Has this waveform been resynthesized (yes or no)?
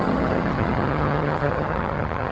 yes